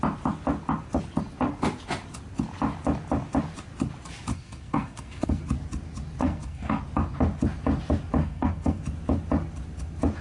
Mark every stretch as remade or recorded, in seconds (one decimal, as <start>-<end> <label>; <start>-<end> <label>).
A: 0.0-4.3 recorded; 4.3-5.4 remade; 5.4-6.2 recorded; 6.2-6.8 remade; 6.8-8.2 recorded; 8.2-8.8 remade; 8.8-10.2 recorded